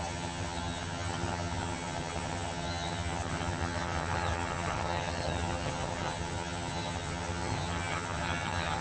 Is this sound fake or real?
fake